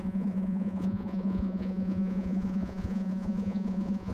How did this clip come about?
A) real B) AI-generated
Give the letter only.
B